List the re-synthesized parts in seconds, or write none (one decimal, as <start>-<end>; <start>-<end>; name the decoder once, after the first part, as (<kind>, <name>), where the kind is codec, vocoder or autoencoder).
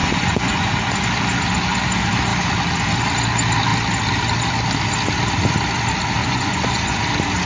0.0-0.7 (vocoder, Vocos); 6.2-7.0